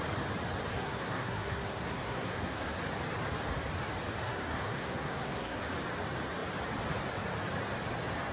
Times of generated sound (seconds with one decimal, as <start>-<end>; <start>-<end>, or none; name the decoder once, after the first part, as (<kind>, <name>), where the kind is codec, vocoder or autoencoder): 0.7-2.8 (codec, SNAC); 4.2-5.7